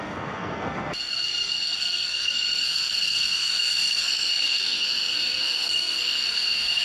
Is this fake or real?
fake